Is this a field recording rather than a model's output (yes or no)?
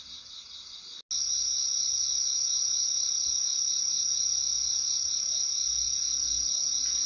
yes